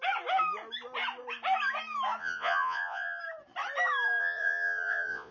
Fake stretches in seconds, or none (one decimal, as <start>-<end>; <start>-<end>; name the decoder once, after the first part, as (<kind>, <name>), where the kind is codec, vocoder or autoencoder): 2.2-3.2 (vocoder, Vocos); 4.2-5.3